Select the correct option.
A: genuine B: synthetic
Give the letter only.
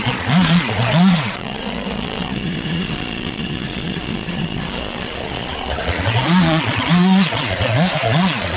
B